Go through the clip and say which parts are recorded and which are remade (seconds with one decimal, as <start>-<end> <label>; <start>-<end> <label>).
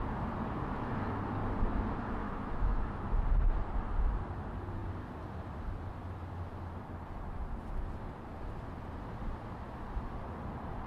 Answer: 0.0-2.2 recorded; 2.2-2.8 remade; 2.8-10.9 recorded